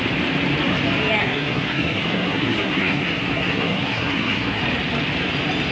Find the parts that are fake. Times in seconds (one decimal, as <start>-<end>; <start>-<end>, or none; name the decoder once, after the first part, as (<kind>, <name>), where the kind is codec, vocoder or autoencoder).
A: 1.2-4.6 (codec, SNAC)